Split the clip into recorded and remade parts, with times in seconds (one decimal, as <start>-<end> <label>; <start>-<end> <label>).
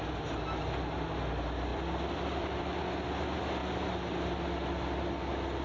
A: 0.0-1.7 recorded; 1.7-2.8 remade; 2.8-5.6 recorded